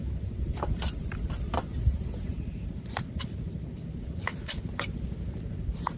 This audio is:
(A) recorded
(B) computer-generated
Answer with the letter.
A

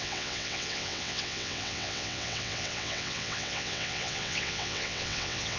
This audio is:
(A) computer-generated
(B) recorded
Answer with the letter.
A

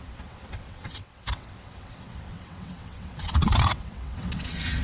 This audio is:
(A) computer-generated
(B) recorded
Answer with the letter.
A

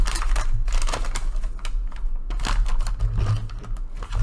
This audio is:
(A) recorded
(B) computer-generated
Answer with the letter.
A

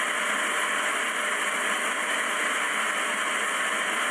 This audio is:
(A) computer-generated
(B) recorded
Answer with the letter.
B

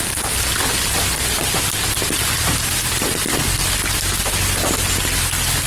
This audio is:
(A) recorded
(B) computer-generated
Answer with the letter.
A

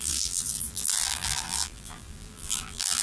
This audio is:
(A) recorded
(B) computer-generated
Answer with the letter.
B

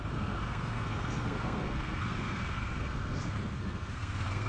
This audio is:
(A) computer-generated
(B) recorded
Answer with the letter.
A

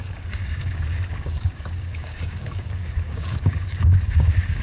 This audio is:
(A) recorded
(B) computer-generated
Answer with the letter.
B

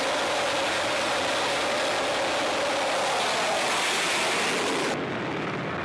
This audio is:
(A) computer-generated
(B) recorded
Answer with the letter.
B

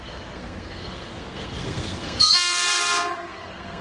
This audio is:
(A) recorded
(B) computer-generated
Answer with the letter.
B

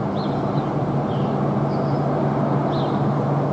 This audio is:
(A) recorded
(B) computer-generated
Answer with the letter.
A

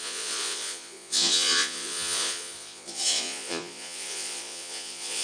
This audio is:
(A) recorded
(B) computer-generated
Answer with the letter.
B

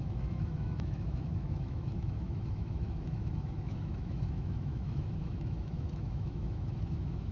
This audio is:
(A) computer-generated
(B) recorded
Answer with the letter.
A